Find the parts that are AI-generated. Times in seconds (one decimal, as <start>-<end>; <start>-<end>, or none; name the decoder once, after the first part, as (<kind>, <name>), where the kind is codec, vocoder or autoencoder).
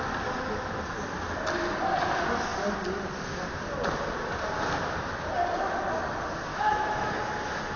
6.5-7.1 (autoencoder, DAC-VAE)